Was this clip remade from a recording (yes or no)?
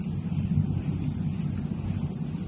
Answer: no